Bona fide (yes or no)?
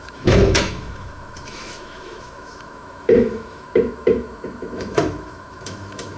no